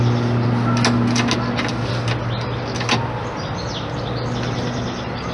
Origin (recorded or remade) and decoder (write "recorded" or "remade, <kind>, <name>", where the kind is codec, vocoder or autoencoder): recorded